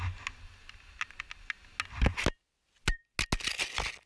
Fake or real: real